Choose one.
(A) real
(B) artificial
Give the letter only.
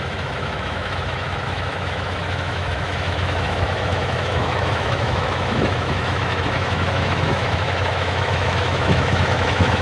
B